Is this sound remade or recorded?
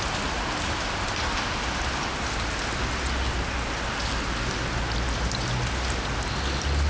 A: recorded